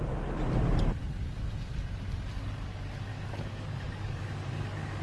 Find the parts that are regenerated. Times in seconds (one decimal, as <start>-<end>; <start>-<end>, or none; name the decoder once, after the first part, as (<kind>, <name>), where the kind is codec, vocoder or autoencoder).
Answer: 3.1-5.0 (codec, DAC)